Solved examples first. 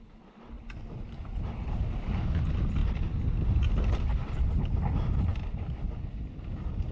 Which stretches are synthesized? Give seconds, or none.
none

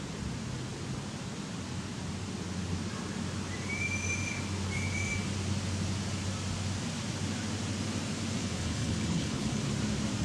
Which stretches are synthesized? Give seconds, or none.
8.4-9.6 (codec, HILCodec)

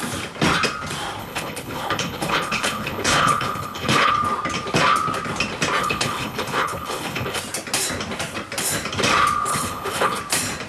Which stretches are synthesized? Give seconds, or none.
1.2-4.1 (codec, HILCodec); 5.8-7.4; 9.5-10.2

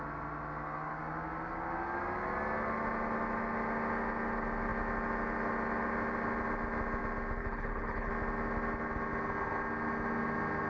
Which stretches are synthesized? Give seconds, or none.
7.4-8.1 (codec, HILCodec)

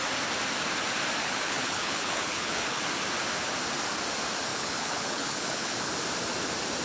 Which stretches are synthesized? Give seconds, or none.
1.2-2.8 (codec, HILCodec); 4.5-5.9

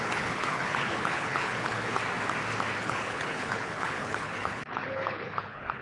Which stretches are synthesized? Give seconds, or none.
0.0-2.0 (codec, HILCodec); 2.8-5.8